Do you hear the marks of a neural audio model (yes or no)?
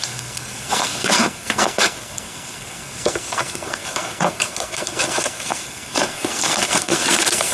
yes